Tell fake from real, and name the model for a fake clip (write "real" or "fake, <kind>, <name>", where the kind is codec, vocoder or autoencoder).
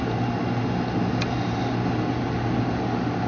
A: real